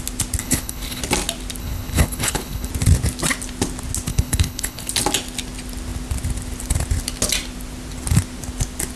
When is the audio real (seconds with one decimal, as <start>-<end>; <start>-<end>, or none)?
0.0-0.4; 1.0-1.6; 2.7-4.1; 4.9-9.0